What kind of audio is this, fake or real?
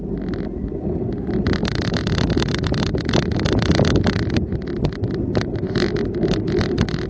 real